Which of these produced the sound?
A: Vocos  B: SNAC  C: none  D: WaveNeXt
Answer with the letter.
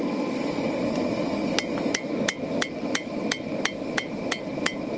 C